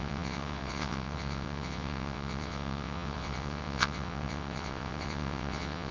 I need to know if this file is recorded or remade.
remade